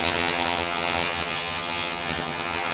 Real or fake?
fake